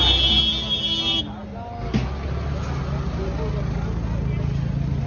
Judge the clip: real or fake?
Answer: real